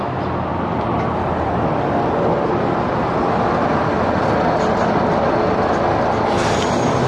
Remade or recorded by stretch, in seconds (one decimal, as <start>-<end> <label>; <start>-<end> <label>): 0.0-7.1 recorded